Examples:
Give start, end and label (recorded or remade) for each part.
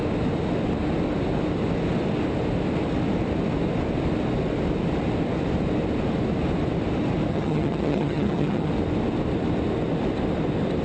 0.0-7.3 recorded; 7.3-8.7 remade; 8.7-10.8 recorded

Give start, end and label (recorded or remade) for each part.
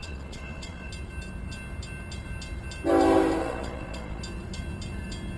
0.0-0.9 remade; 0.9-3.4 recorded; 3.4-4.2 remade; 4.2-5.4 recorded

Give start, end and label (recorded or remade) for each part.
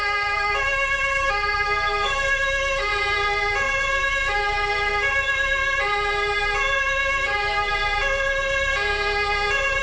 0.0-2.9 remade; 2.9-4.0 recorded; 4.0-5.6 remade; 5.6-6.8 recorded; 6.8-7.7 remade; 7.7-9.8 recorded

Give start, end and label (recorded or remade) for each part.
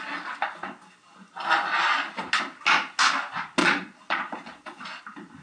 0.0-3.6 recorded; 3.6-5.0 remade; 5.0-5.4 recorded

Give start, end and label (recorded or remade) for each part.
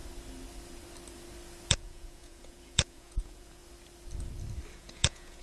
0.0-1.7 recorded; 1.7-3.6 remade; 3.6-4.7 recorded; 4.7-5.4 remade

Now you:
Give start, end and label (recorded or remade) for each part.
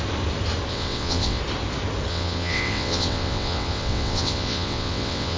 0.0-0.7 recorded; 0.7-1.4 remade; 1.4-2.1 recorded; 2.1-5.4 remade